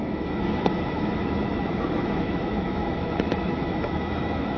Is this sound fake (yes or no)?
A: yes